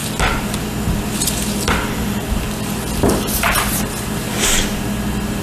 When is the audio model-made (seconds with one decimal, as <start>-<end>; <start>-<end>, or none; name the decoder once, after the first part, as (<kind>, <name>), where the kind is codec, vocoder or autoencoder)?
4.3-4.8 (codec, DAC)